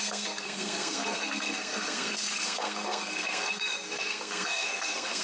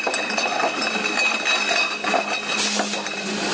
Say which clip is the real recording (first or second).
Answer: second